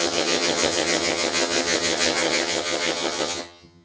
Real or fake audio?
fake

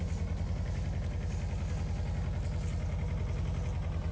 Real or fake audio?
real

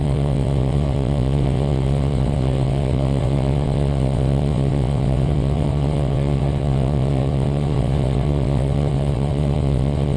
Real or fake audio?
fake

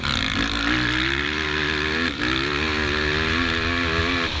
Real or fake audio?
real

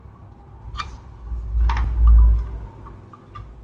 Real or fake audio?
real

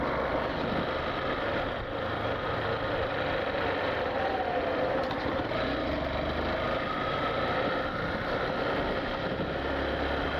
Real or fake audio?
real